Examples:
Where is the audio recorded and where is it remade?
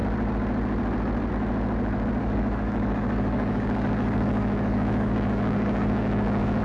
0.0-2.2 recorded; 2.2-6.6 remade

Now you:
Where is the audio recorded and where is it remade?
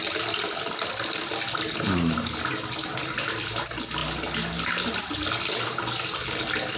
0.0-6.8 recorded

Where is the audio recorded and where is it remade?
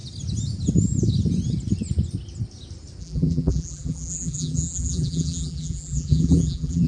0.0-3.0 recorded; 3.0-6.9 remade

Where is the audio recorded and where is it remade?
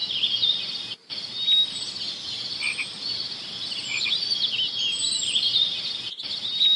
0.0-3.4 recorded; 3.4-4.2 remade; 4.2-6.8 recorded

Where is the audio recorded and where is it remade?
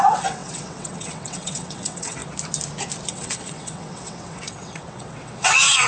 0.0-2.2 remade; 2.2-3.1 recorded; 3.1-5.9 remade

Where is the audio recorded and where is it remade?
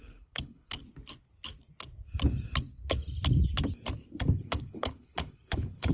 0.0-0.8 remade; 0.8-4.3 recorded; 4.3-5.9 remade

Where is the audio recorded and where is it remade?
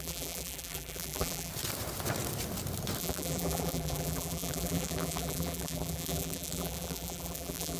0.0-1.5 remade; 1.5-3.0 recorded; 3.0-7.8 remade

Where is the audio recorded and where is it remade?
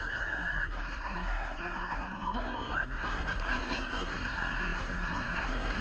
0.0-5.8 remade